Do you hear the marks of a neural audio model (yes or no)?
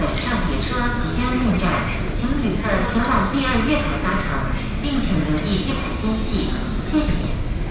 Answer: no